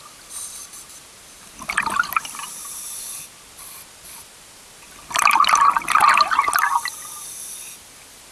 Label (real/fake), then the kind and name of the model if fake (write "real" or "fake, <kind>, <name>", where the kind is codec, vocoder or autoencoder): real